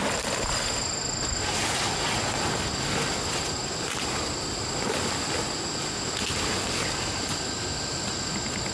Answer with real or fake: real